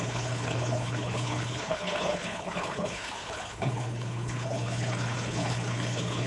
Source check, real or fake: fake